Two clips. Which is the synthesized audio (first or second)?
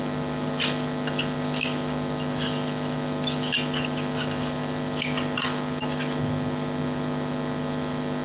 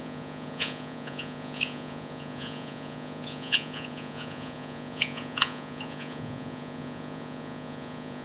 second